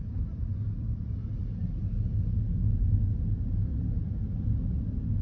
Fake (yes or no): no